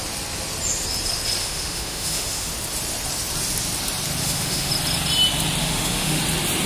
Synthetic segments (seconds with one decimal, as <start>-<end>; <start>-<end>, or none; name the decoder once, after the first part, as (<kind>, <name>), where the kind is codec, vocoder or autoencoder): 1.4-2.5 (autoencoder, DAC-VAE); 4.2-4.7; 5.6-6.2